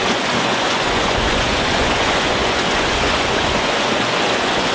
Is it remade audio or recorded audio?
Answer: remade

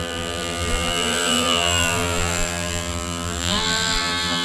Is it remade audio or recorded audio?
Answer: remade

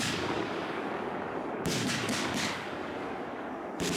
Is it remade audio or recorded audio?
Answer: remade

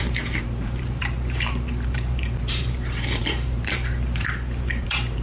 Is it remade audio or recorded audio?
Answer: remade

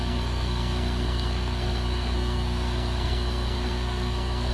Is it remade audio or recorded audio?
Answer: remade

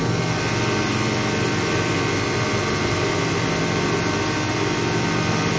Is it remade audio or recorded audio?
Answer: recorded